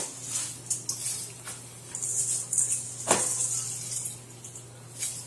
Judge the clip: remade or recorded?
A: recorded